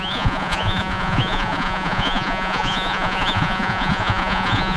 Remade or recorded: remade